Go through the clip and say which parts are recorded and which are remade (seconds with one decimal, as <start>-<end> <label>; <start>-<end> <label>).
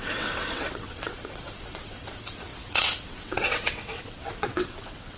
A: 0.0-5.2 remade